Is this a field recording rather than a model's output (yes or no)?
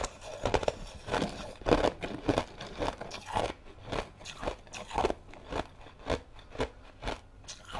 yes